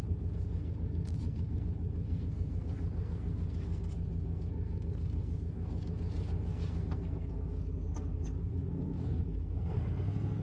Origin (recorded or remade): remade